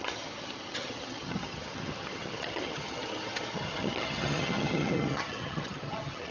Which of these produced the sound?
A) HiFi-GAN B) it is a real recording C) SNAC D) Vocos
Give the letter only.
A